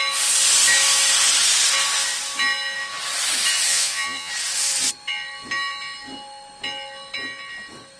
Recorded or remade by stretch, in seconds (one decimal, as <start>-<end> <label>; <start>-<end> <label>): 0.0-3.7 recorded; 3.7-4.3 remade; 4.3-8.0 recorded